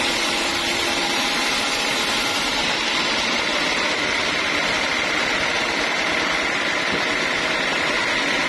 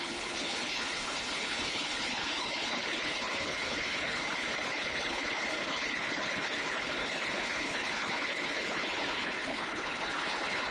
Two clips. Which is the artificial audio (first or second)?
second